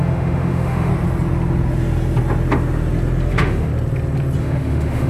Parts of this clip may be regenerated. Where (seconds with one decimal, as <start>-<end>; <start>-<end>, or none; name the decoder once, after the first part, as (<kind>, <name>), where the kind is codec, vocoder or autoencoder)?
0.0-0.9 (autoencoder, DAC-VAE); 3.3-3.7; 4.4-5.1

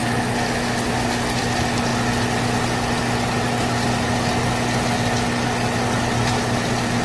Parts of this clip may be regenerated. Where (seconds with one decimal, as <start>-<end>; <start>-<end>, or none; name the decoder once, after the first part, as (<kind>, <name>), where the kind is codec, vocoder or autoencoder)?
none

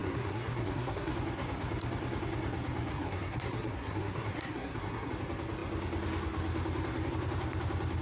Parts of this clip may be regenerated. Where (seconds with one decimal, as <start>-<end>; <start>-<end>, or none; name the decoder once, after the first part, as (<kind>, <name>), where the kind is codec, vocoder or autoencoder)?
0.0-1.1 (codec, SNAC); 2.9-5.1

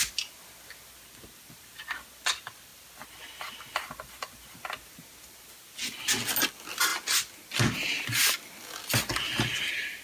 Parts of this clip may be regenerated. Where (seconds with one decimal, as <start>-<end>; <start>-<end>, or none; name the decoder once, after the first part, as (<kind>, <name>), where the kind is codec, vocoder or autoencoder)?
none

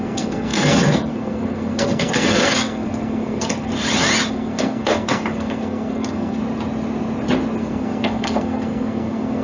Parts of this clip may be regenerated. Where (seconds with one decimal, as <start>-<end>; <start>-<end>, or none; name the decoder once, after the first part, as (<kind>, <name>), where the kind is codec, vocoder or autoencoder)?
0.0-3.7 (codec, SNAC); 4.3-6.4; 7.6-9.4

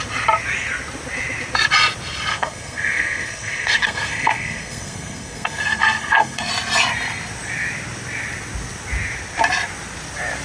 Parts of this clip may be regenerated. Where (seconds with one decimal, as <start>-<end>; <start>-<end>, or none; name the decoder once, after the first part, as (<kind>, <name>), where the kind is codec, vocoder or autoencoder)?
2.3-6.5 (codec, SNAC)

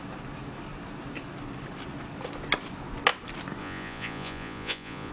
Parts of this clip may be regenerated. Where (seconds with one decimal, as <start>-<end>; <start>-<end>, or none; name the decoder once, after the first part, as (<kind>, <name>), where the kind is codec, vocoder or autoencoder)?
3.6-5.1 (vocoder, Vocos)

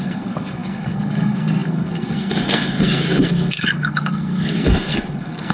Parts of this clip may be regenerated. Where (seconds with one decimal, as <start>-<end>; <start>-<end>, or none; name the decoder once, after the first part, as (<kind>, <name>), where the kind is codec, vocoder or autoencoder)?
0.0-5.5 (codec, SNAC)